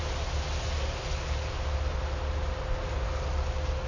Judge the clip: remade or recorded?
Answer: recorded